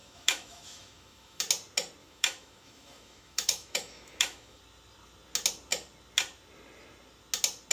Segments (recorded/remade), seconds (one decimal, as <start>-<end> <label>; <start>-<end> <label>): 0.0-1.4 remade; 1.4-2.0 recorded; 2.0-4.6 remade; 4.6-7.7 recorded